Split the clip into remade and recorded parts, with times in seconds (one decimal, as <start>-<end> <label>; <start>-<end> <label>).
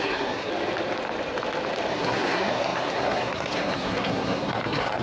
0.0-0.5 remade; 0.5-1.9 recorded; 1.9-5.0 remade